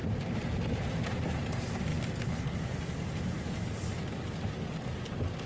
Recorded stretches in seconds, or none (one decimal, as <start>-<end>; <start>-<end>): 0.0-5.5